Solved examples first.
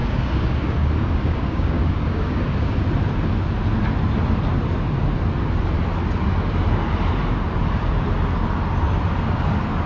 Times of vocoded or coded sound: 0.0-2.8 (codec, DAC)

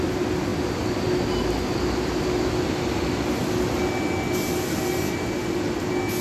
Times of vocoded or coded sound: none

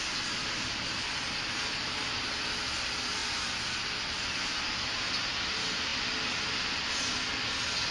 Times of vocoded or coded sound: none